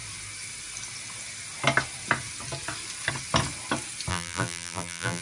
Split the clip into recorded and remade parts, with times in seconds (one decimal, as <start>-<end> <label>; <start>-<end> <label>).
0.0-4.1 recorded; 4.1-5.2 remade